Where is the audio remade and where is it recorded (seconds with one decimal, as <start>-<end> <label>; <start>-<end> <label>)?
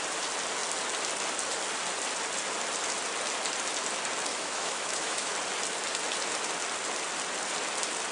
0.0-4.3 recorded; 4.3-5.3 remade; 5.3-8.1 recorded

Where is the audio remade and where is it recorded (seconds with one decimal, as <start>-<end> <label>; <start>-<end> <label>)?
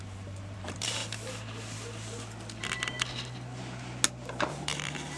0.0-1.0 remade; 1.0-4.1 recorded; 4.1-5.2 remade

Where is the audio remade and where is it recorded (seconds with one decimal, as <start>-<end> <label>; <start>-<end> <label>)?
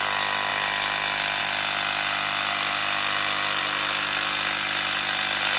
0.0-5.6 recorded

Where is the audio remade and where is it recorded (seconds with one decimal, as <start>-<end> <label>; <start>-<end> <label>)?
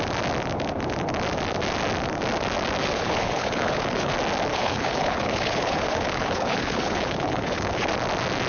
0.0-2.8 recorded; 2.8-4.1 remade; 4.1-4.5 recorded; 4.5-7.9 remade; 7.9-8.5 recorded